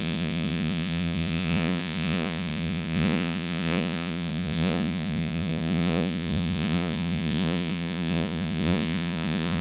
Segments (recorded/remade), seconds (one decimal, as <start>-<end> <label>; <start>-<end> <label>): 0.0-9.6 remade